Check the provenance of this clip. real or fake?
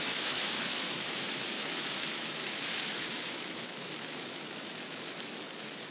fake